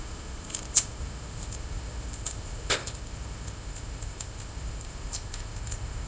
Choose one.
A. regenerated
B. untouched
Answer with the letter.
A